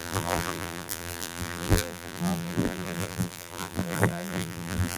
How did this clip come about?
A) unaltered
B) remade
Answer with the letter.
B